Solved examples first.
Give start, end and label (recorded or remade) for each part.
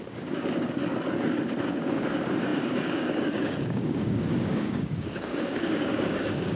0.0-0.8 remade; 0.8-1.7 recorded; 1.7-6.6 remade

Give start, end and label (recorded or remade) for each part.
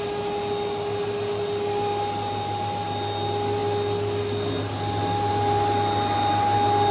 0.0-6.9 recorded